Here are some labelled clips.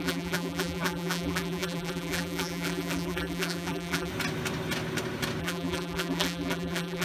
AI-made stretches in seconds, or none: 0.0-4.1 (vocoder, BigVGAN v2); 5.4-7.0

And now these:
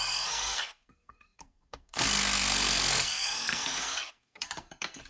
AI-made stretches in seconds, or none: 0.0-5.1 (codec, SNAC)

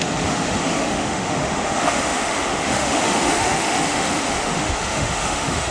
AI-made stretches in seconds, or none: 0.0-5.7 (autoencoder, DAC-VAE)